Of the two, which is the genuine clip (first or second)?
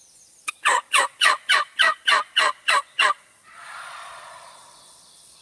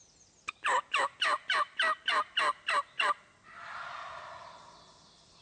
second